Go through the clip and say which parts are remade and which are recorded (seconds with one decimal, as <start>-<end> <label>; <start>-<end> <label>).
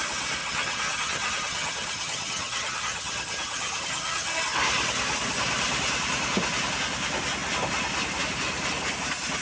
0.0-0.4 recorded; 0.4-4.3 remade; 4.3-9.4 recorded